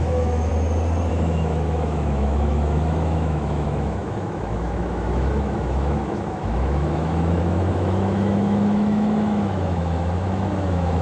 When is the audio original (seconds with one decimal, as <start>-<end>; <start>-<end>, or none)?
0.5-1.1